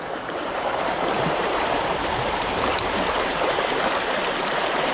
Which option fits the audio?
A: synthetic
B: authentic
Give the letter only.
A